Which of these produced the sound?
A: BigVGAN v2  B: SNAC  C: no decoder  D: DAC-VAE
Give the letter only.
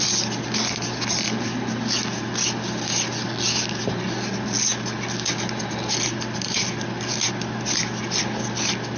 C